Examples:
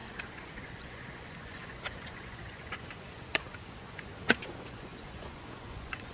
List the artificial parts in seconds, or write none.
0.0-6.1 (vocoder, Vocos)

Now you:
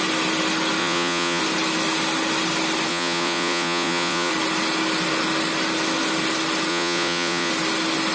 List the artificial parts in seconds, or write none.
0.8-1.4 (vocoder, Vocos); 2.9-4.3; 6.7-7.5

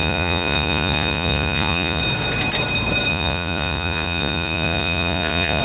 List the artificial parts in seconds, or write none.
0.0-2.0 (vocoder, Vocos); 3.1-5.6